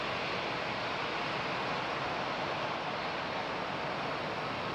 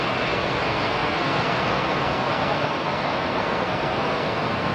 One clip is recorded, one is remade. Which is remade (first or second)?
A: second